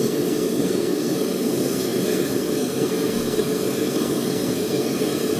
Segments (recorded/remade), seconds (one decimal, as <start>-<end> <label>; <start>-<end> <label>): 0.0-5.4 remade